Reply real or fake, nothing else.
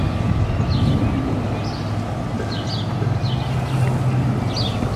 real